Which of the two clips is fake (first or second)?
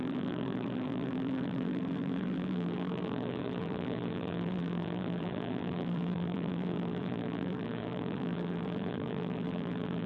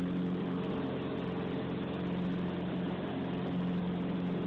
first